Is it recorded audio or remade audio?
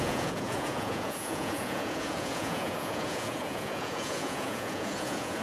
remade